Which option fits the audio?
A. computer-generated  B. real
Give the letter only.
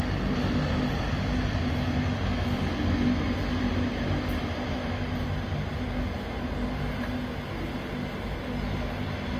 B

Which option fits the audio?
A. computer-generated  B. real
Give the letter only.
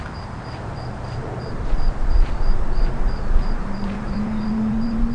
A